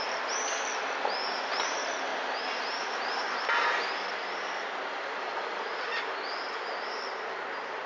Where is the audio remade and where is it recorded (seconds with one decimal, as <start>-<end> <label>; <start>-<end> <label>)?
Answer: 0.0-7.9 recorded